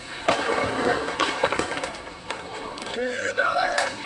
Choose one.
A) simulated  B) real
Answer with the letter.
A